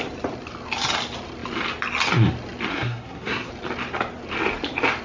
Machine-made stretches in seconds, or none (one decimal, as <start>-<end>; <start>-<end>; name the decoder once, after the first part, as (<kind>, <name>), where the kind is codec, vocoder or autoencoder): 2.7-3.5 (codec, SNAC)

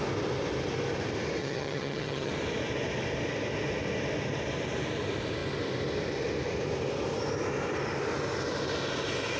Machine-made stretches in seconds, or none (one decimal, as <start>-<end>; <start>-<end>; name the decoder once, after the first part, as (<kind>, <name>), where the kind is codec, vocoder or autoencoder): 1.4-2.3 (vocoder, HiFi-GAN)

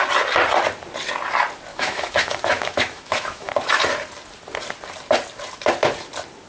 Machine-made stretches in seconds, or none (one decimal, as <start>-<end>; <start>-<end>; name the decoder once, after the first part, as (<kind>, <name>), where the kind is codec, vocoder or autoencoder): 1.7-3.5 (autoencoder, DAC-VAE)

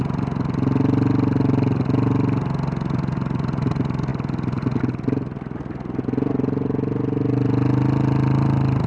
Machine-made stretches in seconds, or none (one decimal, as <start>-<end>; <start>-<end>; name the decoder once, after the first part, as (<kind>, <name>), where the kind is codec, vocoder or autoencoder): none

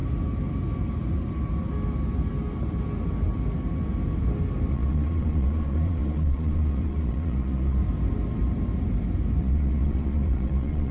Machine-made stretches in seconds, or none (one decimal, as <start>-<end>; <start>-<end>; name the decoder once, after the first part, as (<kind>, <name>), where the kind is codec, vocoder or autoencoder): 4.7-7.8 (vocoder, Vocos); 9.4-10.9